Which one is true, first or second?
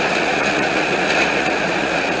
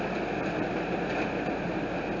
second